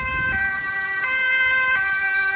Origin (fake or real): real